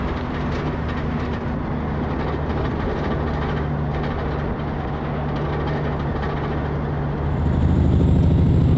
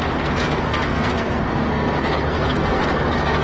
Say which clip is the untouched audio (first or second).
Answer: first